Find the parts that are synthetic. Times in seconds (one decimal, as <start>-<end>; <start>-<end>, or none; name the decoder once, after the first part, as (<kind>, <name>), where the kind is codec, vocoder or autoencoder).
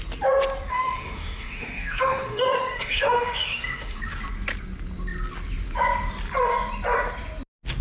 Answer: 0.7-4.0 (autoencoder, DAC-VAE)